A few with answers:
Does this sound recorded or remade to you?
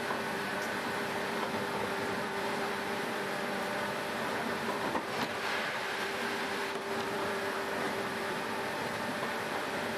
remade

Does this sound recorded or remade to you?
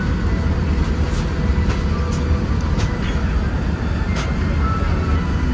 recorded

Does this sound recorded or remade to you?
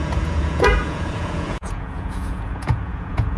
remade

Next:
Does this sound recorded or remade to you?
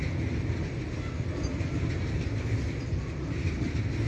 recorded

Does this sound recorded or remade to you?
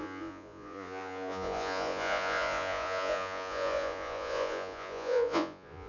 remade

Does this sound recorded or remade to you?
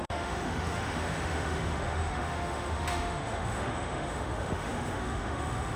remade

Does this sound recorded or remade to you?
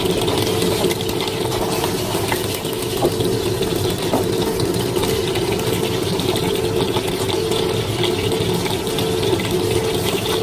recorded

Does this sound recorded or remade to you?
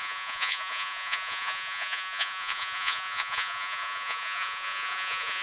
remade